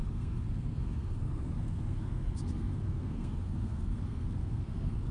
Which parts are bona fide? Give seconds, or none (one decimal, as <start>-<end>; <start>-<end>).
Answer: none